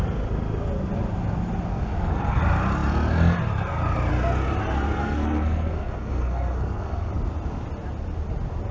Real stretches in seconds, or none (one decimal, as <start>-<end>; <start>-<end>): 0.0-1.7; 2.4-5.0; 7.1-8.7